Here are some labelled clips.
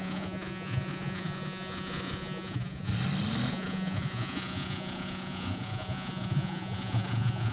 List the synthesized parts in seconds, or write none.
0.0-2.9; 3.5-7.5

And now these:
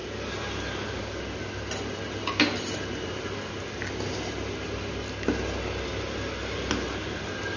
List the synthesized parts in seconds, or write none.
none

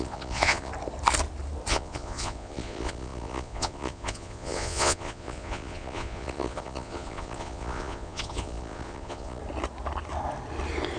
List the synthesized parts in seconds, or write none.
0.0-0.7; 1.7-9.4